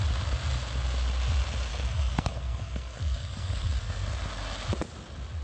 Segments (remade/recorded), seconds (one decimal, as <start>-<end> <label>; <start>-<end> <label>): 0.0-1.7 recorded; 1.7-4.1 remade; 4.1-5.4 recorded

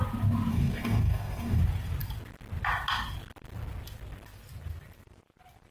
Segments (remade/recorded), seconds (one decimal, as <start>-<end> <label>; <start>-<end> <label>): 0.0-0.5 recorded; 0.5-1.6 remade; 1.6-5.7 recorded

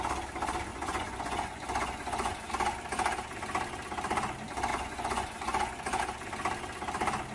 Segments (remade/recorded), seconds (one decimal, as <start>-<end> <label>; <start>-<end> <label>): 0.0-0.7 recorded; 0.7-2.5 remade; 2.5-4.7 recorded; 4.7-6.0 remade; 6.0-7.3 recorded

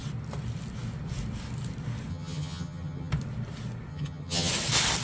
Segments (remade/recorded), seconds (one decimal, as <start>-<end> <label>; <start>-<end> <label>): 0.0-2.1 recorded; 2.1-3.1 remade; 3.1-3.9 recorded; 3.9-4.5 remade; 4.5-5.0 recorded

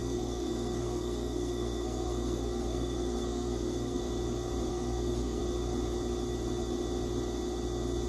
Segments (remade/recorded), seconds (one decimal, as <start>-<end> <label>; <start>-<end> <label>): 0.0-4.0 remade; 4.0-4.7 recorded; 4.7-5.4 remade; 5.4-8.1 recorded